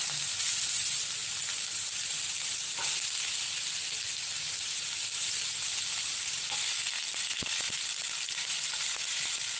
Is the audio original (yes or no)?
no